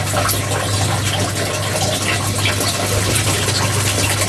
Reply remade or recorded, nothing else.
recorded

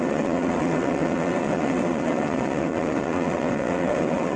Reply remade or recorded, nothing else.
remade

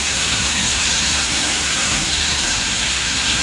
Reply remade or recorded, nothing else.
remade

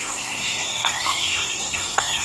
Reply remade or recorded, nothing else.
remade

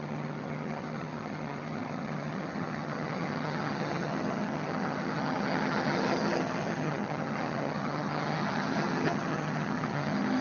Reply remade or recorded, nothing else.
remade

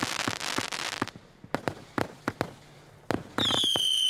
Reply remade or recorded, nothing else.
recorded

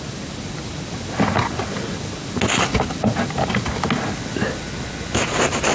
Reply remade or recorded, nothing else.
recorded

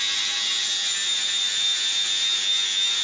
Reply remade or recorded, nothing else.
recorded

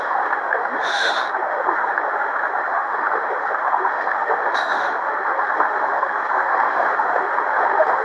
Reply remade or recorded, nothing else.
remade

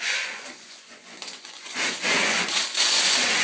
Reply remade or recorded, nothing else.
remade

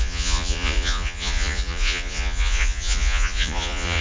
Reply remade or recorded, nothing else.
remade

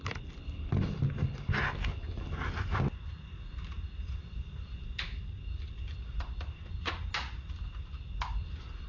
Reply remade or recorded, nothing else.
recorded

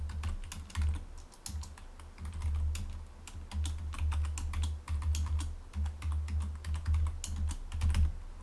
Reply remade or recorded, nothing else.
recorded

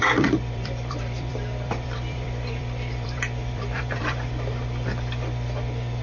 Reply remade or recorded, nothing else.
remade